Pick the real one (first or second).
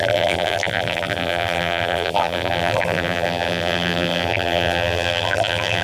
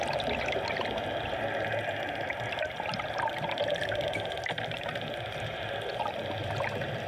second